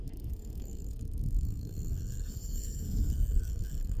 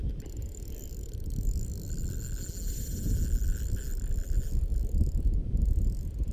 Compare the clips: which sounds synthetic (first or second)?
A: first